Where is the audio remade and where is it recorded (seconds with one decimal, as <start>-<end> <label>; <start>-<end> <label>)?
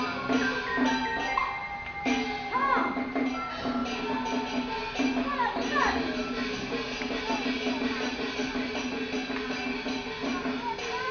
0.0-11.1 recorded